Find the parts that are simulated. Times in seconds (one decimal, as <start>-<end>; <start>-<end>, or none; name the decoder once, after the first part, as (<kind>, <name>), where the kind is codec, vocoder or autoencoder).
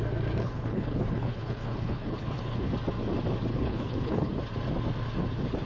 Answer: 0.4-2.7 (codec, HILCodec); 3.5-4.3